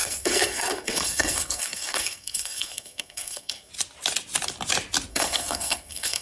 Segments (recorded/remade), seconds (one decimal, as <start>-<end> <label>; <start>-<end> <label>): 0.0-3.7 remade; 3.7-5.1 recorded; 5.1-6.2 remade